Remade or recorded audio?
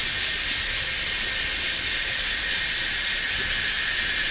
recorded